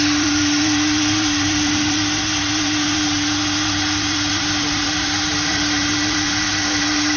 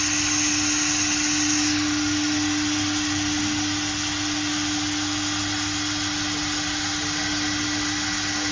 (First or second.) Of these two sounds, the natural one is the second